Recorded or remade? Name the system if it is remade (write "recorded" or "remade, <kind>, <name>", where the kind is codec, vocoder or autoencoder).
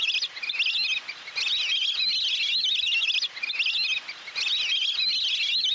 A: recorded